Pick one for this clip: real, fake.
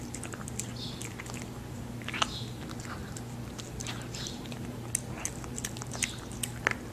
real